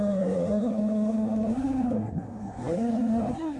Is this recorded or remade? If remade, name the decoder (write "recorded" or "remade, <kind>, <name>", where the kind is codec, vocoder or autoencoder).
remade, codec, SNAC